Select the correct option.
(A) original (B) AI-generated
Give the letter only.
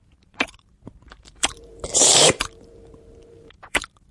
B